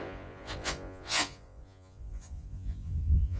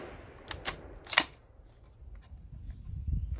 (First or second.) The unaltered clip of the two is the second